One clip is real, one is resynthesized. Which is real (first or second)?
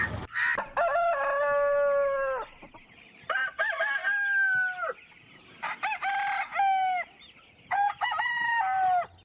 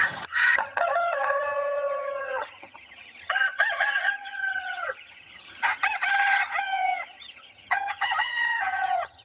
first